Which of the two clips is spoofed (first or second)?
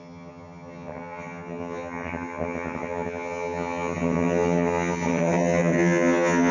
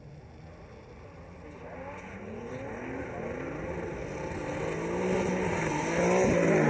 first